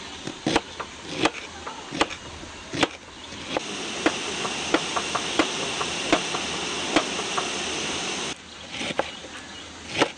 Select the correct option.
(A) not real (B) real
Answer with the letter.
B